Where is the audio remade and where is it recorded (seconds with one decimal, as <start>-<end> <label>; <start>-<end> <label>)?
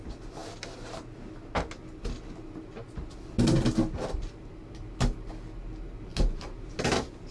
0.0-7.3 recorded